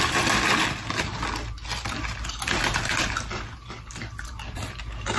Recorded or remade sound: recorded